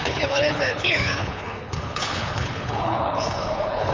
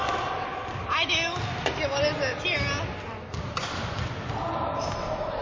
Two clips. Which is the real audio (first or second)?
second